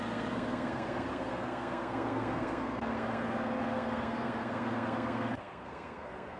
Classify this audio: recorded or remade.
remade